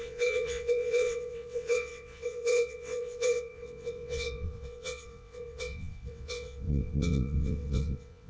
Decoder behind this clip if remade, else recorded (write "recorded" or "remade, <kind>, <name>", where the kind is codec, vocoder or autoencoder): remade, vocoder, WaveNeXt